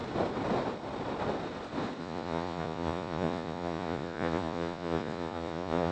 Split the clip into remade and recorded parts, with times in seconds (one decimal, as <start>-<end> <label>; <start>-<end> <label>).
0.0-2.0 recorded; 2.0-5.9 remade